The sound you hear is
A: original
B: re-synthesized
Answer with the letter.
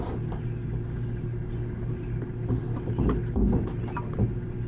A